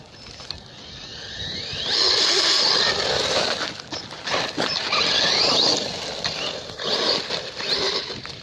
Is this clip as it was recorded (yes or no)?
yes